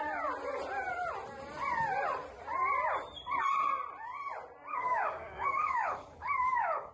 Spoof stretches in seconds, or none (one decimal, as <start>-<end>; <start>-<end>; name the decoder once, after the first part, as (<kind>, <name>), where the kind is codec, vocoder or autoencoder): 4.7-6.9 (codec, DAC)